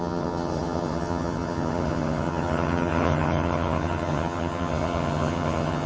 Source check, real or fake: fake